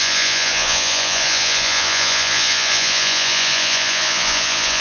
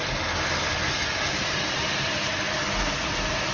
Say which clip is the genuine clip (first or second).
second